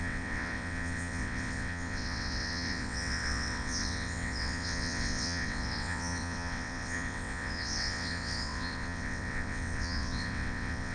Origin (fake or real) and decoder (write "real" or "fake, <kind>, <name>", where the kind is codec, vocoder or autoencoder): fake, vocoder, WaveNeXt